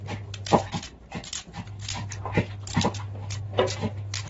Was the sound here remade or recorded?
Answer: recorded